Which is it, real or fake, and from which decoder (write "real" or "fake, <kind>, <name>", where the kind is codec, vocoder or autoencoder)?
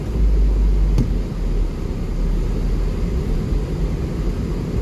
real